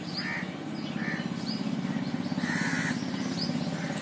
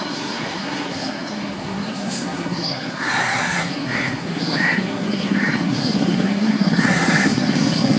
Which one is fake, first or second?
second